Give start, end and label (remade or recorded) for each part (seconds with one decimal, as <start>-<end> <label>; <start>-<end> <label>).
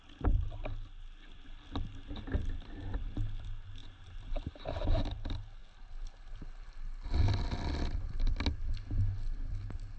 0.0-3.8 recorded; 3.8-5.0 remade; 5.0-10.0 recorded